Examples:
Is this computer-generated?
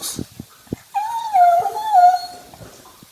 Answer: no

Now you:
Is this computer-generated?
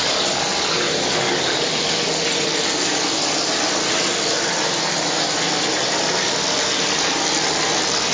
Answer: no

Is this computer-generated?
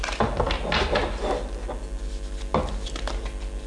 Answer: no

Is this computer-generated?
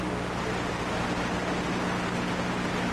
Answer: no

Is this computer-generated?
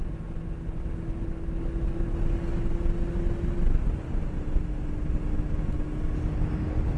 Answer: no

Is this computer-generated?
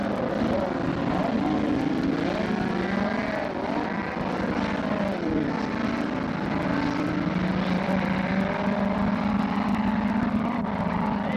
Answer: no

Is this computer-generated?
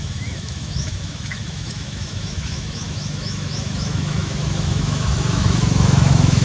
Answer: yes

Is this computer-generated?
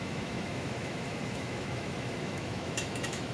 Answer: yes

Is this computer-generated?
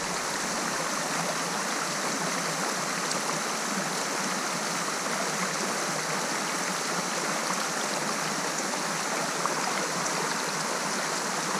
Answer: no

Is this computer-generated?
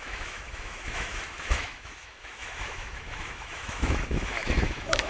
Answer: yes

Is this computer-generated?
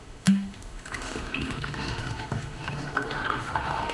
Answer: yes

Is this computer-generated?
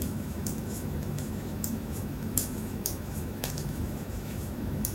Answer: yes